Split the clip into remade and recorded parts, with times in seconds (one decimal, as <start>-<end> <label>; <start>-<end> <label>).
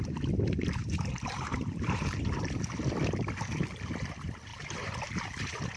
0.0-0.8 recorded; 0.8-2.4 remade; 2.4-4.5 recorded; 4.5-5.1 remade; 5.1-5.8 recorded